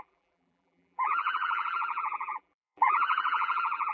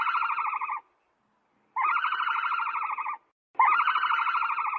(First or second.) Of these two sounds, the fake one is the first